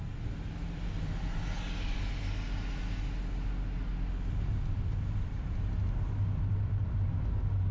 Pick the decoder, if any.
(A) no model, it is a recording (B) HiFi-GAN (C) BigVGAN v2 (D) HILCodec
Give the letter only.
A